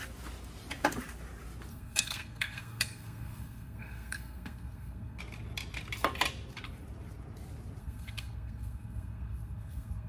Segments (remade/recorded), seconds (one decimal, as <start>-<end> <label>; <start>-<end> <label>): 0.0-1.7 recorded; 1.7-5.2 remade; 5.2-7.8 recorded; 7.8-10.1 remade